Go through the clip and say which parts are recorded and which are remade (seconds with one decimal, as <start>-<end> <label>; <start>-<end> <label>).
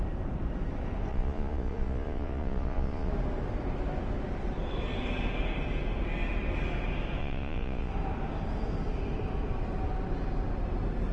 0.0-1.1 recorded; 1.1-3.1 remade; 3.1-7.2 recorded; 7.2-7.9 remade; 7.9-11.1 recorded